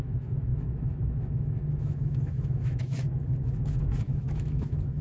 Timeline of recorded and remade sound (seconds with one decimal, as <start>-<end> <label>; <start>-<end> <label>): 0.0-5.0 remade